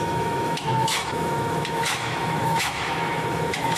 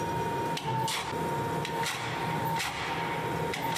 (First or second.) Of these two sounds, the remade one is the first